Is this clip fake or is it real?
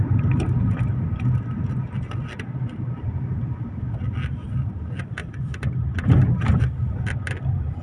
real